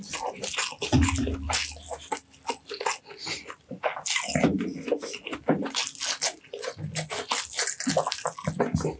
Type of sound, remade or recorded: recorded